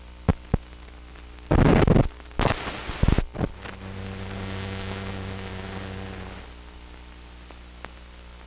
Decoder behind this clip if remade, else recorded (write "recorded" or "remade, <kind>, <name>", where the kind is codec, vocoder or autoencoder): recorded